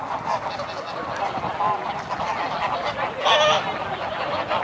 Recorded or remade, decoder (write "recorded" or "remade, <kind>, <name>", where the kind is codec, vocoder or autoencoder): recorded